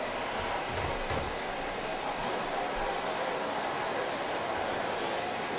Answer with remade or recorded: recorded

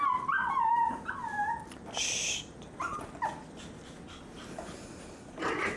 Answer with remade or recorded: recorded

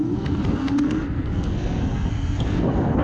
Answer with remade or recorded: remade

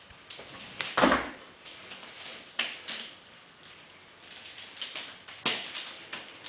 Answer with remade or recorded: recorded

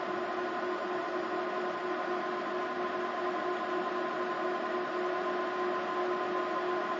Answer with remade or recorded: recorded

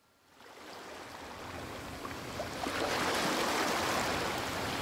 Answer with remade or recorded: recorded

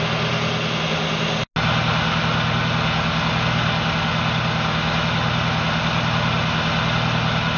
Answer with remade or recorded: recorded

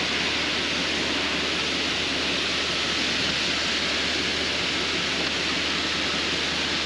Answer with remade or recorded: recorded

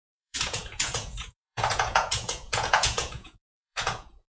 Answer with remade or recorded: remade